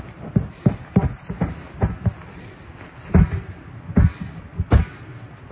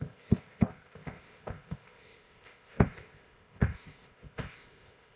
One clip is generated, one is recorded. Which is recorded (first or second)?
first